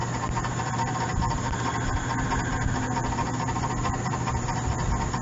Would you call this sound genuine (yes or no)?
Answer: yes